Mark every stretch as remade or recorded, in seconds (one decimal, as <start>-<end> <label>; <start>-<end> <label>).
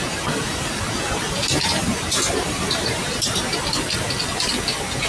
0.0-0.5 recorded; 0.5-3.6 remade; 3.6-5.1 recorded